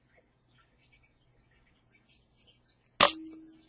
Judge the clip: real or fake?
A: real